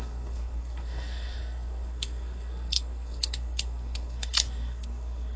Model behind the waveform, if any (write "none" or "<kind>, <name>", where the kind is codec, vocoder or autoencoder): codec, SNAC